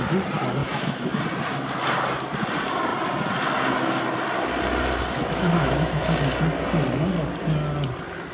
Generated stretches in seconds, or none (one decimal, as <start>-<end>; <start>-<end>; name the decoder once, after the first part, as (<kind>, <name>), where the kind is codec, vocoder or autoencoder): 0.6-1.2 (autoencoder, DAC-VAE); 5.2-6.0